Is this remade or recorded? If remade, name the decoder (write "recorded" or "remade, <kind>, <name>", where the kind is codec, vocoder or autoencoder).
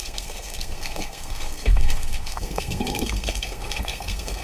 remade, codec, SNAC